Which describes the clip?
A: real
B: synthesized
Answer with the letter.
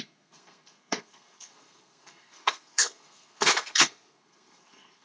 B